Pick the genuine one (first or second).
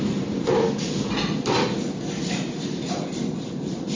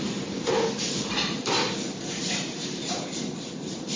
first